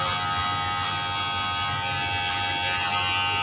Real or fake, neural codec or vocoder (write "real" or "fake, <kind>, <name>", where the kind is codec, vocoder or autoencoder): real